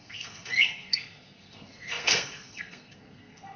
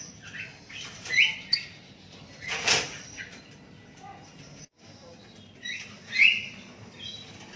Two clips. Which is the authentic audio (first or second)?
second